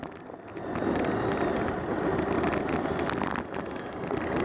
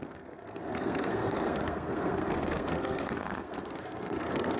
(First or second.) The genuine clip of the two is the first